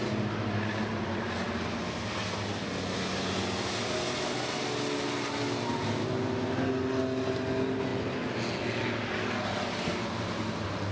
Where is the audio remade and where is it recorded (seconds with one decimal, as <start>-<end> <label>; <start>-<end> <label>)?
0.0-10.9 recorded